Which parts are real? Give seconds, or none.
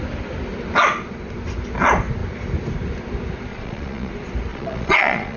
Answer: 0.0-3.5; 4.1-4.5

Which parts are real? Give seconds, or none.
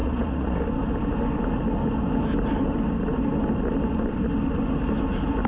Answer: 0.6-5.5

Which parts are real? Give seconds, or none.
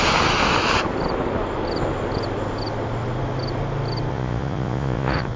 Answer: 0.0-4.1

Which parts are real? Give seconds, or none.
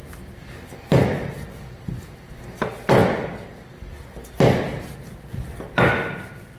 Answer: 0.0-6.6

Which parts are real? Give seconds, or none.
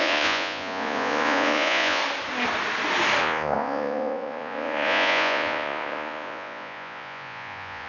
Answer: 2.0-3.2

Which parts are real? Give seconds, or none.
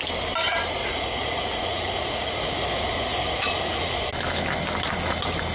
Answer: 0.0-0.8; 4.1-5.5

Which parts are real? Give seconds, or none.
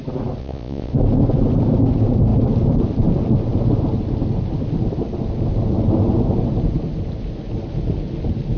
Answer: 0.0-0.4; 0.9-8.6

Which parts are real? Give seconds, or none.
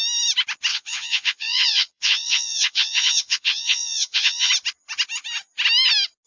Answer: 0.0-0.7; 4.5-6.3